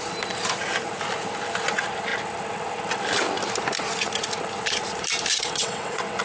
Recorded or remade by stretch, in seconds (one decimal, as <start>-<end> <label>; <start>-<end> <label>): 0.0-5.3 recorded; 5.3-6.2 remade